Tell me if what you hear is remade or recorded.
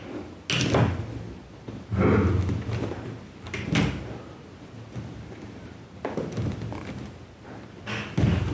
recorded